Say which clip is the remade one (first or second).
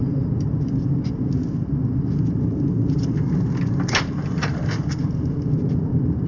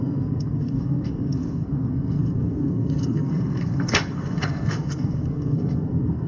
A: second